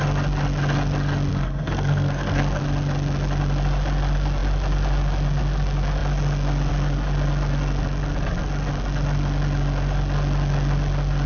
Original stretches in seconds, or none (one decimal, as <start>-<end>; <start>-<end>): 0.0-1.3; 2.6-11.3